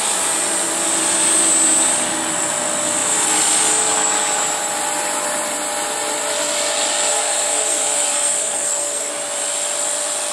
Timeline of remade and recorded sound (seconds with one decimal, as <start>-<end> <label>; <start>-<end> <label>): 0.0-7.1 recorded; 7.1-9.1 remade; 9.1-10.3 recorded